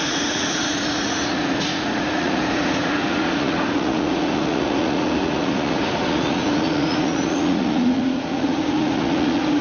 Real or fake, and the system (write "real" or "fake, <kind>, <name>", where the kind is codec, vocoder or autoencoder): fake, vocoder, Vocos